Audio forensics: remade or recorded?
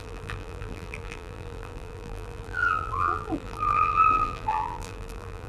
remade